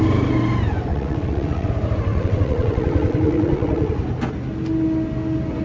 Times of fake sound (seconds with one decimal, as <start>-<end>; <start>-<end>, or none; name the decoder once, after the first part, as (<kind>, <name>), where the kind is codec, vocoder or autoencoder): 0.9-1.7 (vocoder, WaveNeXt); 2.1-3.9